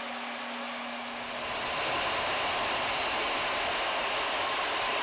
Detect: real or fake real